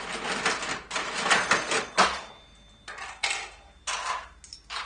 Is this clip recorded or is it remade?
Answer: recorded